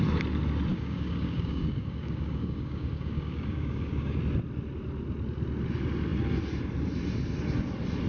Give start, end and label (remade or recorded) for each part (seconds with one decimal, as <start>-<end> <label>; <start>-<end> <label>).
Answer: 0.0-0.7 recorded; 0.7-4.2 remade; 4.2-8.1 recorded